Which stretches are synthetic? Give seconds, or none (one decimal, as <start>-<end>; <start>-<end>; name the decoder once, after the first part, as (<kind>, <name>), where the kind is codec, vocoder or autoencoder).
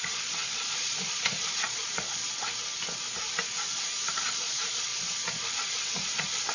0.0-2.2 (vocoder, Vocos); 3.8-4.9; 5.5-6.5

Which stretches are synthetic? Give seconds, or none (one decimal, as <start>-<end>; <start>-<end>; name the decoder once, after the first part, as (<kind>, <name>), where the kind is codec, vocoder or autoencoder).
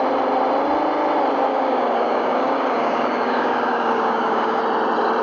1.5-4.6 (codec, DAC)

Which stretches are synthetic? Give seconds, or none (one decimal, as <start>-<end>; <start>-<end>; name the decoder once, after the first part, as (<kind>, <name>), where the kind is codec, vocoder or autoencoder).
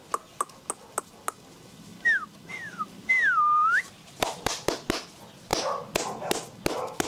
1.9-4.7 (vocoder, BigVGAN v2)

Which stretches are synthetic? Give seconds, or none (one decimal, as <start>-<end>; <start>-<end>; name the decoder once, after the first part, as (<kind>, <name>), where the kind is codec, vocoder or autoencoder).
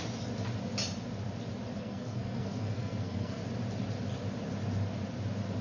1.8-3.4 (codec, SNAC)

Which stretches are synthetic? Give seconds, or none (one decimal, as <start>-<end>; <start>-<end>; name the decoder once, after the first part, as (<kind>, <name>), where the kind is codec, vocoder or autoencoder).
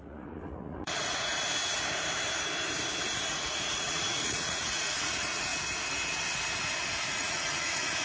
0.0-1.3 (vocoder, Vocos); 3.3-5.5; 7.1-8.0